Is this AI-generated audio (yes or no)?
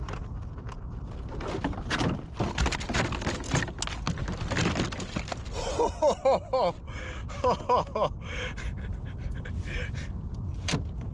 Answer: no